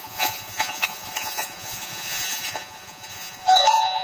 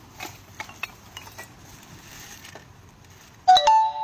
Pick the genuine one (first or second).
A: second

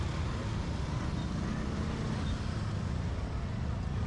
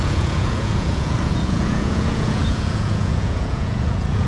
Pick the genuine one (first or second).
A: first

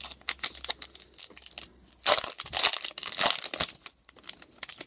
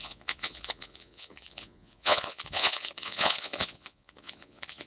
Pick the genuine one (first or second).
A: first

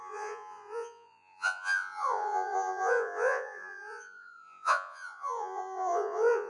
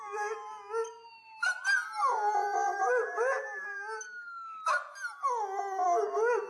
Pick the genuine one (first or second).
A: second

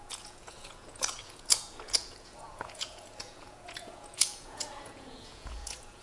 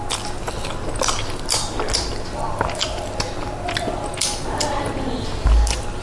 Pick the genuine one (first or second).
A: second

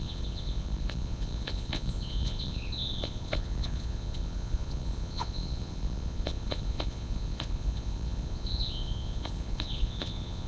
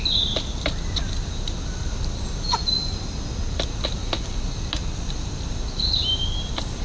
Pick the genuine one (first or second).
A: second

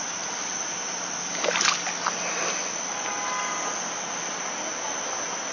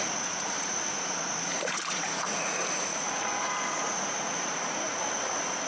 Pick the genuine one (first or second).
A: first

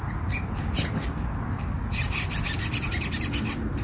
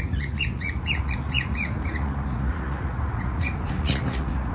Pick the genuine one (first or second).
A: first